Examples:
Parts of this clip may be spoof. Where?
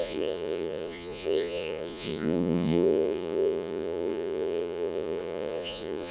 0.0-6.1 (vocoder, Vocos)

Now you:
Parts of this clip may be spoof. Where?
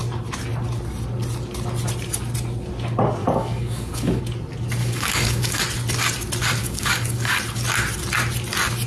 3.2-4.2 (codec, DAC); 4.8-5.6; 6.6-7.4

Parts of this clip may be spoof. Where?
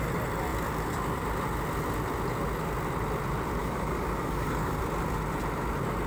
3.6-4.8 (codec, DAC)